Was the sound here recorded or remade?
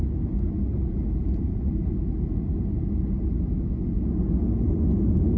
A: recorded